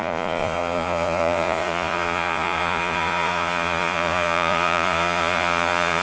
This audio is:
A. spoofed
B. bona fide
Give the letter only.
A